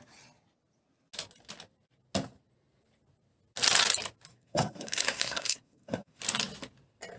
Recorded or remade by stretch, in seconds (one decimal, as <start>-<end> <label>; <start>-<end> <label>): 0.0-4.3 recorded; 4.3-6.2 remade; 6.2-7.2 recorded

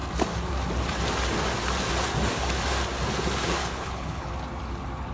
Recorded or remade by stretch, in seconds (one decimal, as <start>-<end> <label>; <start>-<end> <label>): 0.0-3.6 recorded; 3.6-4.3 remade; 4.3-5.1 recorded

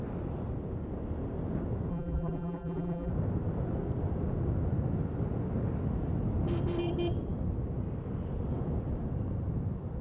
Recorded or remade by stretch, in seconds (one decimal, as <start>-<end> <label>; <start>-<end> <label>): 0.0-1.9 recorded; 1.9-3.1 remade; 3.1-10.0 recorded

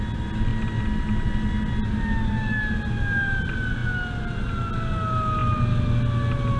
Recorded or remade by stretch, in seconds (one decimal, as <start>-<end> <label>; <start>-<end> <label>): 0.0-6.6 recorded

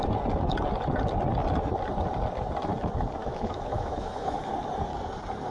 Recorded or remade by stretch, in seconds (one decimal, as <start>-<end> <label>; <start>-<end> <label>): 0.0-3.2 recorded; 3.2-4.4 remade; 4.4-5.5 recorded

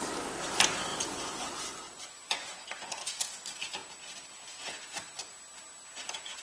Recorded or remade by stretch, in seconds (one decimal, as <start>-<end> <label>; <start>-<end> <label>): 0.0-0.9 recorded; 0.9-3.1 remade; 3.1-6.4 recorded